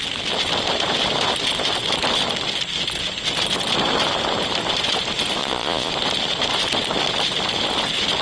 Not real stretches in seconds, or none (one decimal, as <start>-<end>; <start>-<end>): 5.4-5.9